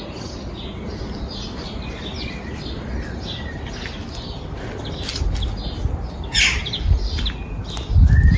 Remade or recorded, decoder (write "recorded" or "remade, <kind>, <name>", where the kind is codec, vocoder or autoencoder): recorded